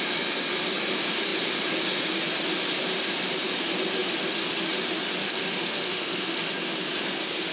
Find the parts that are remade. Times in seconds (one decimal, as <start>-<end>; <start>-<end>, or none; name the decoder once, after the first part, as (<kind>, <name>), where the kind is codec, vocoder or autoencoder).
5.2-6.5 (autoencoder, DAC-VAE)

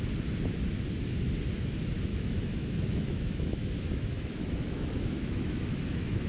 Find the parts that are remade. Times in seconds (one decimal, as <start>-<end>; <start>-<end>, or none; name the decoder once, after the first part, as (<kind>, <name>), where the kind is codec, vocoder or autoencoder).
2.1-6.3 (autoencoder, DAC-VAE)

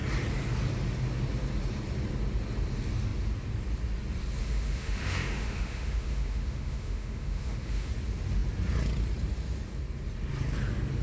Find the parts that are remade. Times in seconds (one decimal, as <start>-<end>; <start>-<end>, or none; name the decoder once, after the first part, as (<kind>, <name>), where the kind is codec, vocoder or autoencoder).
4.4-7.9 (autoencoder, DAC-VAE)

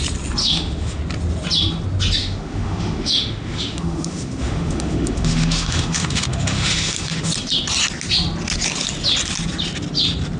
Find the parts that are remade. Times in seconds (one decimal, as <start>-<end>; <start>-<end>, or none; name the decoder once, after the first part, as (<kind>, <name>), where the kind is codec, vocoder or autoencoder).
0.4-1.0 (autoencoder, DAC-VAE); 2.2-7.3

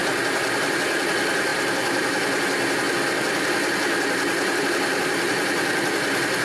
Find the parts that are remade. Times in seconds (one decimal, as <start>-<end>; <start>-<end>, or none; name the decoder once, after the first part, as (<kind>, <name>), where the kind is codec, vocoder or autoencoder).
none